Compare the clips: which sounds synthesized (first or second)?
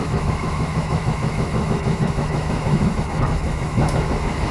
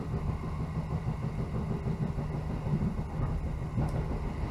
first